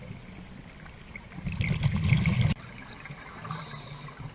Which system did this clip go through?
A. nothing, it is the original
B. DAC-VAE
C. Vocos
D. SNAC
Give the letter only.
A